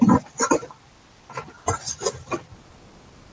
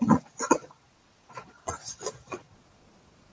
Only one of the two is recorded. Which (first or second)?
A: first